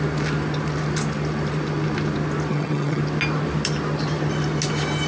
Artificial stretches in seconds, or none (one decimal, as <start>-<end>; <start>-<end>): 2.5-3.0